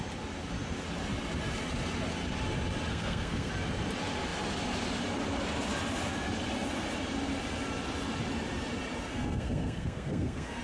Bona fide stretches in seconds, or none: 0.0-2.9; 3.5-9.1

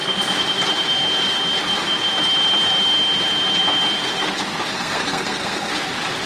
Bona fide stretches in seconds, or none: 0.0-4.7; 5.7-6.3

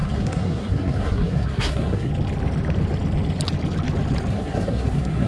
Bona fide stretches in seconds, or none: 2.1-4.3

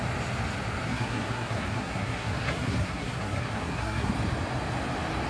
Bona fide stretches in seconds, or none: 0.0-0.9; 4.1-5.3

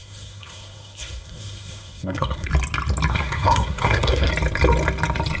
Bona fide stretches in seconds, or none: 2.5-3.1; 4.3-5.4

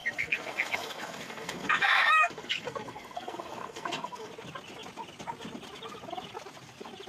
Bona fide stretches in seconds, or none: 4.3-7.1

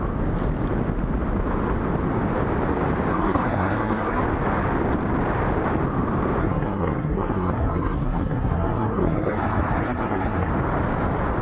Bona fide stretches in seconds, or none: 0.0-3.1; 4.2-6.4; 10.5-11.4